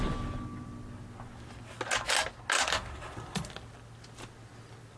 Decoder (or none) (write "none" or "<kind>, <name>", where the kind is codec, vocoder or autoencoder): none